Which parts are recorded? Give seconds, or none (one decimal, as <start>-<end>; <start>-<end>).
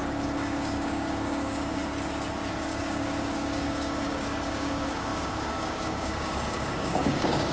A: 1.8-2.5